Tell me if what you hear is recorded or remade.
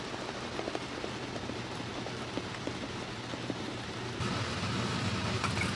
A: recorded